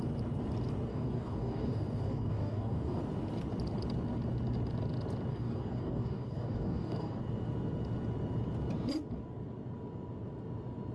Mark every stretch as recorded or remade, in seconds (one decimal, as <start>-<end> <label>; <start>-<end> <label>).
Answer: 0.0-0.9 recorded; 0.9-3.0 remade; 3.0-5.3 recorded; 5.3-7.2 remade; 7.2-10.9 recorded

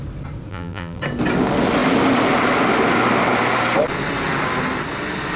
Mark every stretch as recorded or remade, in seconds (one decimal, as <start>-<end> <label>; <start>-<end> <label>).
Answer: 0.0-0.5 recorded; 0.5-1.0 remade; 1.0-5.4 recorded

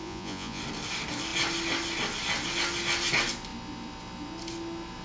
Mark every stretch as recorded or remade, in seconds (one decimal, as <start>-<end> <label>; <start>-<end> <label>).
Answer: 0.0-0.6 remade; 0.6-5.0 recorded

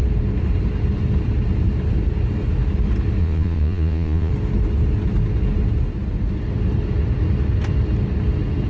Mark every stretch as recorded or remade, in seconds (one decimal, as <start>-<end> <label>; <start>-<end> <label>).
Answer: 0.0-3.2 recorded; 3.2-4.3 remade; 4.3-8.7 recorded

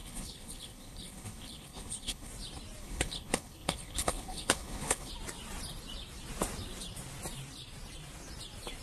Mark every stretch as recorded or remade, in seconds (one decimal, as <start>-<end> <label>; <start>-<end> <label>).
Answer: 0.0-2.3 remade; 2.3-2.8 recorded; 2.8-5.1 remade; 5.1-8.8 recorded

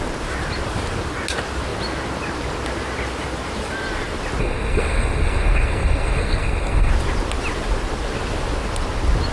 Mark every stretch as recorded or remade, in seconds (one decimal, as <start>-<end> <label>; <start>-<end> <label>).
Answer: 0.0-4.4 recorded; 4.4-6.9 remade; 6.9-9.3 recorded

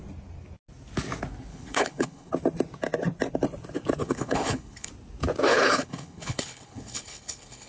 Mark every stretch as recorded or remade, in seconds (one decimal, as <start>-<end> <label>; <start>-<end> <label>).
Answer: 0.0-1.5 recorded; 1.5-2.3 remade; 2.3-4.0 recorded; 4.0-4.9 remade; 4.9-5.5 recorded; 5.5-7.7 remade

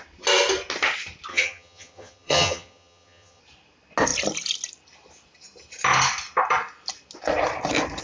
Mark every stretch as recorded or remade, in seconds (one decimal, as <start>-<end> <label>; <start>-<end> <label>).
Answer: 0.0-1.3 recorded; 1.3-3.4 remade; 3.4-8.0 recorded